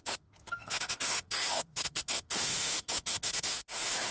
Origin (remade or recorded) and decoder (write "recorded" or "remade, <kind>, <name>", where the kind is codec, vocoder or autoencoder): remade, autoencoder, DAC-VAE